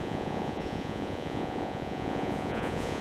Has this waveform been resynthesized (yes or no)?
yes